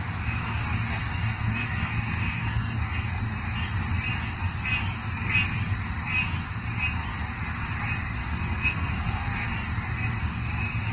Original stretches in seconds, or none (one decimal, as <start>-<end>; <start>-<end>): 0.0-0.9; 3.2-8.2; 9.5-10.9